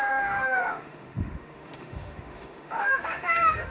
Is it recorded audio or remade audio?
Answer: remade